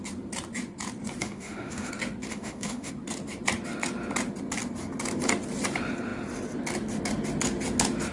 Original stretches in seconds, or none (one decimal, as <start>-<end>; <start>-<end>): 0.0-1.2; 1.9-2.3; 2.9-8.1